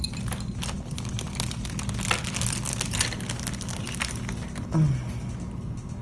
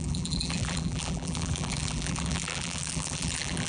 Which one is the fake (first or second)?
second